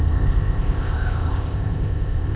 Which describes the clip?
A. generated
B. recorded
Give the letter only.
A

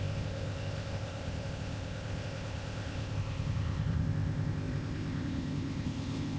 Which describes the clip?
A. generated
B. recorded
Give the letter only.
A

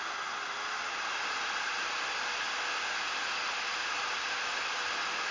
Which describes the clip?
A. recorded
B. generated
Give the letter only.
A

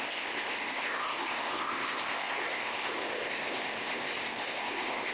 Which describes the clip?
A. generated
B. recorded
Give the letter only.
A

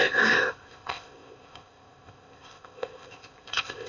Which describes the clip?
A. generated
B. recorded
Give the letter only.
A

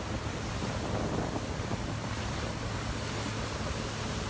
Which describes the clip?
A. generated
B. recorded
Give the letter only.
B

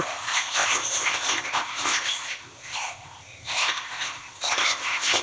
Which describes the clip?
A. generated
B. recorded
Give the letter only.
A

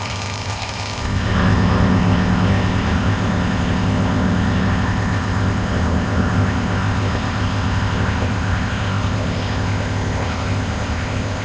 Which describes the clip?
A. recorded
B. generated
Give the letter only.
B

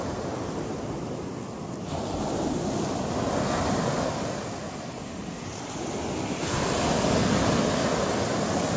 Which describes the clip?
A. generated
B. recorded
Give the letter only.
B